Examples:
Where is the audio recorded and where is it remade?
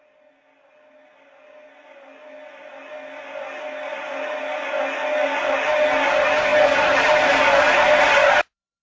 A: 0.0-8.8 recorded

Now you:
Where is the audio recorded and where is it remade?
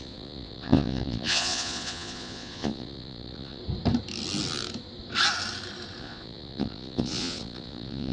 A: 0.0-3.6 remade; 3.6-6.0 recorded; 6.0-8.1 remade